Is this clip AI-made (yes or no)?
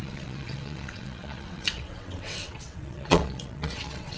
yes